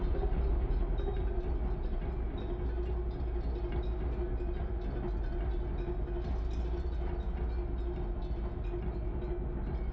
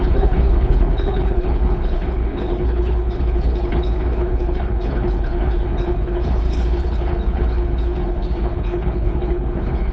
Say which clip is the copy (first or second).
second